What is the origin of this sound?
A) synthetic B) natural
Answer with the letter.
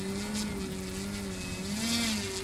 B